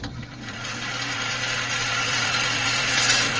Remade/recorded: remade